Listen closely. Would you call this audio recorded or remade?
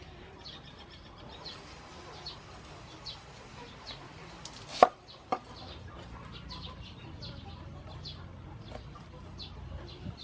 recorded